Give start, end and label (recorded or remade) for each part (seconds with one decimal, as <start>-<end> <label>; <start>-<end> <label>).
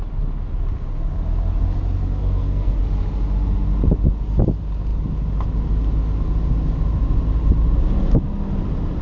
0.0-2.2 recorded; 2.2-2.8 remade; 2.8-9.0 recorded